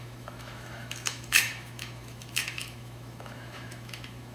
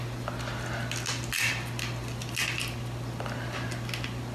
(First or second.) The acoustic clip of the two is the second